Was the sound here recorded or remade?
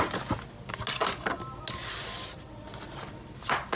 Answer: recorded